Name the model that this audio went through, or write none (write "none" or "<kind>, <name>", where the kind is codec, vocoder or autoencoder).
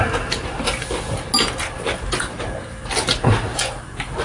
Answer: none